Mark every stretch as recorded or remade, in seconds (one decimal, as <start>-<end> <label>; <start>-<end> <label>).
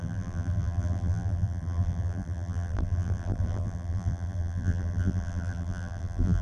0.0-6.4 remade